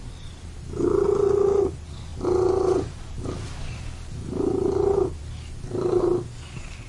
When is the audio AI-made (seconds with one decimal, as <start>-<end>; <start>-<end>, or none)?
none